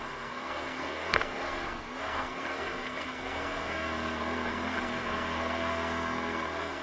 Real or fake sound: fake